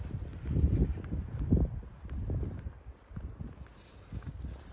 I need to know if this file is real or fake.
real